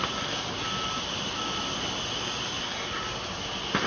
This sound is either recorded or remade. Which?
recorded